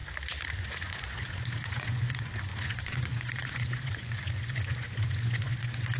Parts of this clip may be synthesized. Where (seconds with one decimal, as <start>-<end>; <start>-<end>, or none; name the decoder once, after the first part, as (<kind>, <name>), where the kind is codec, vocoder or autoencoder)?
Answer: 0.6-6.0 (vocoder, Vocos)